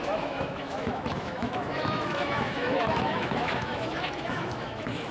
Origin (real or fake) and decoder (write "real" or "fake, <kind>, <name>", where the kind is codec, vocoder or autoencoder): fake, autoencoder, DAC-VAE